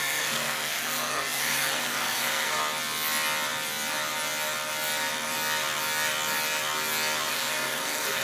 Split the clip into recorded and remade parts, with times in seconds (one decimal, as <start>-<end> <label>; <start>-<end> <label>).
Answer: 0.0-2.6 remade; 2.6-7.3 recorded; 7.3-8.2 remade